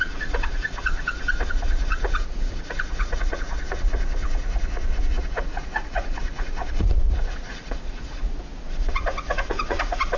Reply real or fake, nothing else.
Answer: fake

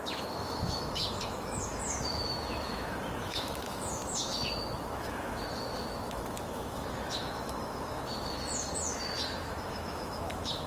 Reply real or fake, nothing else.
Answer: fake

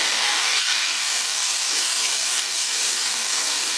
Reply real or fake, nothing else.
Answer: fake